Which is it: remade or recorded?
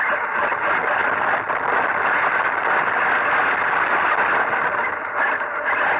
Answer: recorded